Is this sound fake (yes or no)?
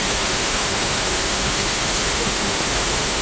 yes